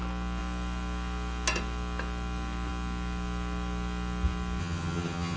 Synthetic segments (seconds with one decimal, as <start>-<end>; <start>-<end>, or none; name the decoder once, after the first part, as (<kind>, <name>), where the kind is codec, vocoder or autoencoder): 4.6-5.4 (vocoder, HiFi-GAN)